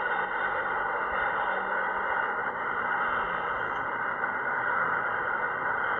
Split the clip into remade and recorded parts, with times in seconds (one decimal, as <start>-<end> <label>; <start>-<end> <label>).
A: 0.0-2.4 recorded; 2.4-5.4 remade; 5.4-6.0 recorded